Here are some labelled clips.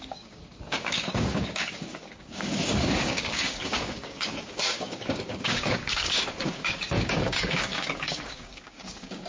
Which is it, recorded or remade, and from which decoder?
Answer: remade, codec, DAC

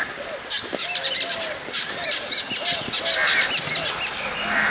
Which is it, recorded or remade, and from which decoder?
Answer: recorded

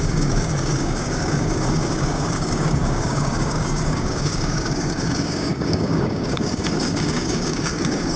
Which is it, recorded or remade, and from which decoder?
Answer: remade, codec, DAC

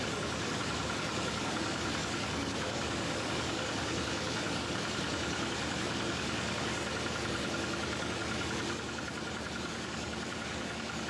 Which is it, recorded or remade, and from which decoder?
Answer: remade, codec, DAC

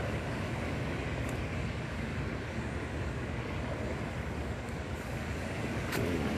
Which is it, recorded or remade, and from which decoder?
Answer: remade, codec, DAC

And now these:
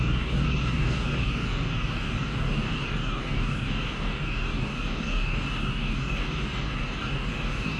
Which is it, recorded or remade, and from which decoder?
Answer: remade, codec, DAC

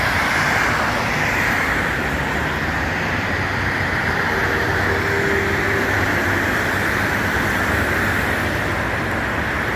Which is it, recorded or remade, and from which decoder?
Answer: recorded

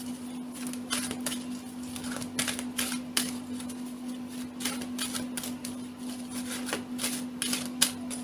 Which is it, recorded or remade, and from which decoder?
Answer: recorded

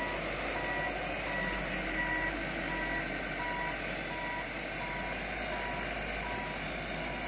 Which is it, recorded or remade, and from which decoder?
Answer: recorded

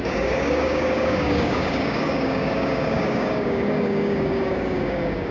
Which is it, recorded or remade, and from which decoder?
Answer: remade, codec, DAC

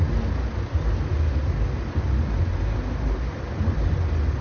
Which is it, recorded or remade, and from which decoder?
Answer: recorded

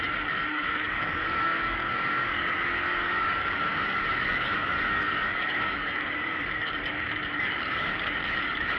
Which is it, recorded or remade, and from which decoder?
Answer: remade, codec, DAC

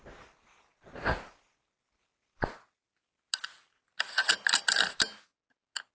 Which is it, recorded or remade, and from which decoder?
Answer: recorded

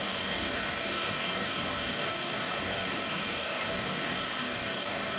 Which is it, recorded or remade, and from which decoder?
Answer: remade, codec, DAC